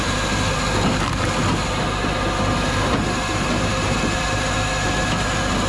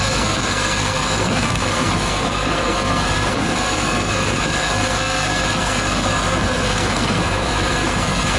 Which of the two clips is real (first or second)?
first